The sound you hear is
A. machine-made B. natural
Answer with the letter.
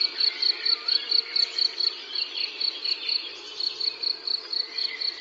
A